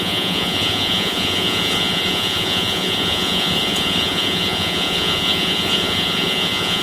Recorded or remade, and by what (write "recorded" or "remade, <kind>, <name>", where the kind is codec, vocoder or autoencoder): remade, vocoder, Vocos